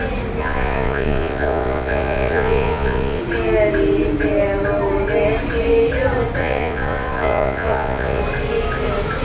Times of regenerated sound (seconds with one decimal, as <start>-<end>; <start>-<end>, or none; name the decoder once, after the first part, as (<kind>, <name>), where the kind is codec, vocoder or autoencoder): 0.4-3.2 (vocoder, Vocos); 6.4-8.2